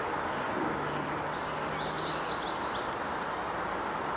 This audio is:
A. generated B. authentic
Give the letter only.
B